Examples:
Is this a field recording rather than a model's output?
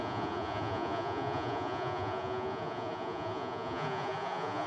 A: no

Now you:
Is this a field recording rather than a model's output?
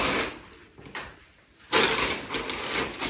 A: yes